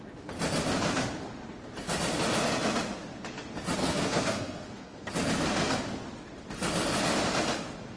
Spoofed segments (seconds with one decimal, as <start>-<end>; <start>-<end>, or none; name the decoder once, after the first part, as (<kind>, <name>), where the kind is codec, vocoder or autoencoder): 3.8-5.1 (codec, SNAC)